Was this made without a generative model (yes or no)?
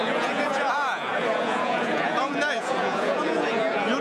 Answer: no